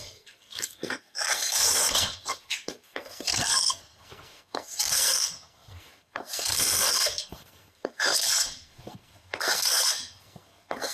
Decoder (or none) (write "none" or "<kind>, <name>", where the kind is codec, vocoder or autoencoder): codec, SNAC